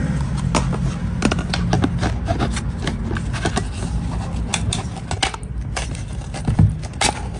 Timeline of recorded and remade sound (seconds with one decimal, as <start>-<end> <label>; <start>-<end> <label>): 0.0-7.4 recorded